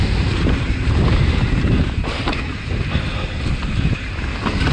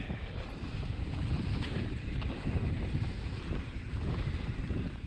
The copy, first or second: second